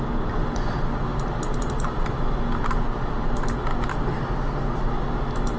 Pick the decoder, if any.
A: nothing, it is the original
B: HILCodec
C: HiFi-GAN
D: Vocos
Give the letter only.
A